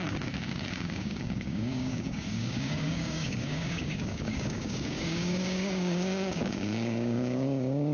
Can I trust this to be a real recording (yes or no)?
no